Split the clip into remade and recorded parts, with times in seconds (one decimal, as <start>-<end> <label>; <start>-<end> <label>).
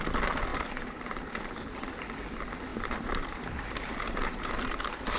0.0-0.5 recorded; 0.5-1.3 remade; 1.3-2.7 recorded; 2.7-4.5 remade; 4.5-5.2 recorded